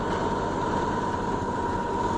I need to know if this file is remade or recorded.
remade